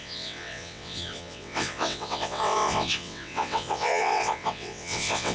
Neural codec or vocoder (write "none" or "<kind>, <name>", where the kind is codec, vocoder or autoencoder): vocoder, WaveNeXt